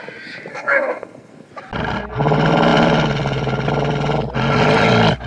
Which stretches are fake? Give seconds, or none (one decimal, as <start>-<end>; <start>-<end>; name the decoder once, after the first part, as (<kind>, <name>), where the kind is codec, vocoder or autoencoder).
0.5-1.5 (codec, SNAC)